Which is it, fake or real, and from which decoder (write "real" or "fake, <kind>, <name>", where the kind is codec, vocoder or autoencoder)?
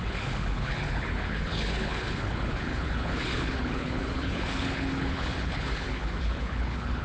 fake, codec, HILCodec